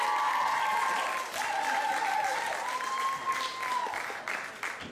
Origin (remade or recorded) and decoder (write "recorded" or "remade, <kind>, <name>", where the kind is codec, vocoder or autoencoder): recorded